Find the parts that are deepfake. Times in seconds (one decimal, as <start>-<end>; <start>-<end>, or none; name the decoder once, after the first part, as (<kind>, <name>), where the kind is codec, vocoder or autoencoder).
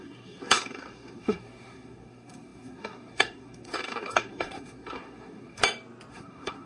0.0-5.6 (codec, SNAC); 6.1-6.7